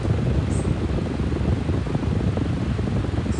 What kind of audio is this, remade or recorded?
recorded